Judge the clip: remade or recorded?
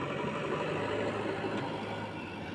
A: recorded